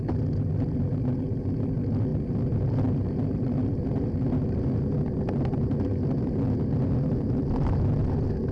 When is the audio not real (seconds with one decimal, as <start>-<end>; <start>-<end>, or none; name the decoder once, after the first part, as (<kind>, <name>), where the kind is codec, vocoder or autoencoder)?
none